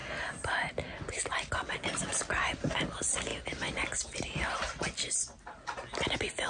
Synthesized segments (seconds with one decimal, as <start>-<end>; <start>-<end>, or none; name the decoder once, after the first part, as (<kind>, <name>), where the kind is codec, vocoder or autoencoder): none